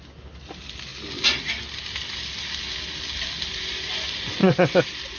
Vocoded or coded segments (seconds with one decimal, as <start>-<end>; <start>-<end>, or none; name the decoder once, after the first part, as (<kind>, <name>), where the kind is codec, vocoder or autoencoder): none